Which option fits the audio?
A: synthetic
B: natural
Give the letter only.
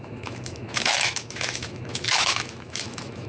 A